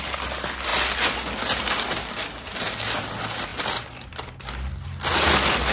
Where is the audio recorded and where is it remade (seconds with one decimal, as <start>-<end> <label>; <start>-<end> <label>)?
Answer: 0.0-5.7 recorded